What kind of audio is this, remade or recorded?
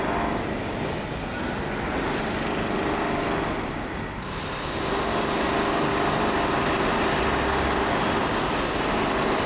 recorded